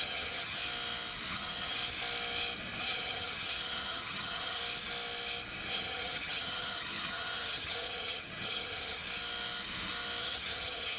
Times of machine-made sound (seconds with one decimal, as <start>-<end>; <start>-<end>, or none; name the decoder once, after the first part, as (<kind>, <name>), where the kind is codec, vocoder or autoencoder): 0.0-0.6 (vocoder, HiFi-GAN); 1.3-1.8; 2.8-4.6; 5.7-9.0; 10.2-11.0